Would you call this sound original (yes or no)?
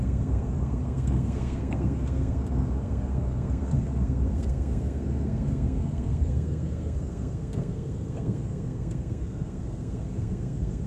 no